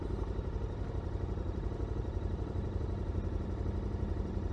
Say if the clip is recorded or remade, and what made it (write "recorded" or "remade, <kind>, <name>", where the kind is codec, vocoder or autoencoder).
remade, vocoder, BigVGAN v2